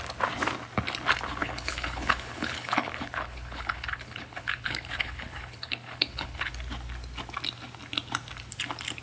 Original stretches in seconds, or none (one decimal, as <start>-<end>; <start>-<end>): 0.0-1.4; 6.5-9.0